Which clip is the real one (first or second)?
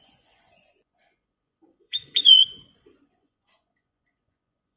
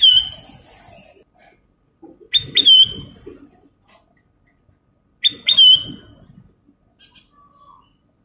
second